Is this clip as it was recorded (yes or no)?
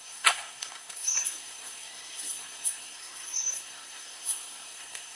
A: no